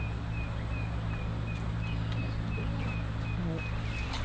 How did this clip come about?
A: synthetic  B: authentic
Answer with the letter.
B